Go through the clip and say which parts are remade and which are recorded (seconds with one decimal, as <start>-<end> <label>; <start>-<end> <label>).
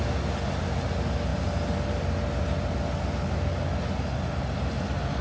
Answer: 0.0-5.2 recorded